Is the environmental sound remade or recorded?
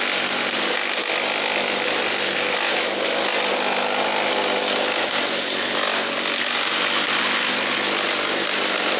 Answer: recorded